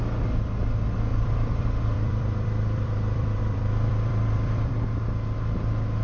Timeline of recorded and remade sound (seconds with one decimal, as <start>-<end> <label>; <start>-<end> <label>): 0.0-1.1 recorded; 1.1-4.7 remade; 4.7-6.0 recorded